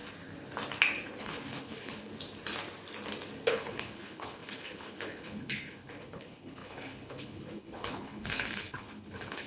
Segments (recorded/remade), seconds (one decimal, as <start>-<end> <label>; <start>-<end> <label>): 0.0-1.2 recorded; 1.2-2.1 remade; 2.1-3.5 recorded; 3.5-9.5 remade